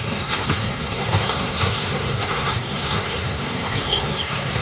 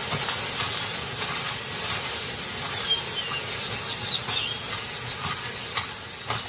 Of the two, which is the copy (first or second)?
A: first